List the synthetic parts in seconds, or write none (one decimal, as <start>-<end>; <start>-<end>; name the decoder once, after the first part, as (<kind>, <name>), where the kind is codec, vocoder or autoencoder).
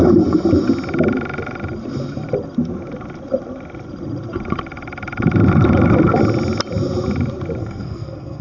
7.6-8.4 (codec, SNAC)